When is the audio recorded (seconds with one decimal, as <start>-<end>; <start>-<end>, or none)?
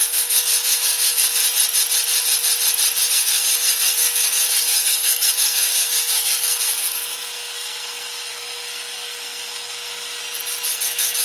1.4-3.1; 10.2-10.7